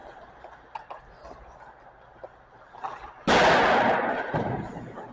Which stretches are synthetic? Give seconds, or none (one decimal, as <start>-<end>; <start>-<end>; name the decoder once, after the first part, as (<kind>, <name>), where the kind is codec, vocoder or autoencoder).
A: none